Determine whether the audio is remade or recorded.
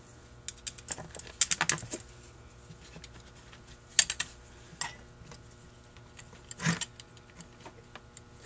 recorded